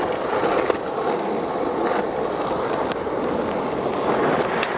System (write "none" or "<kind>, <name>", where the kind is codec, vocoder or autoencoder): none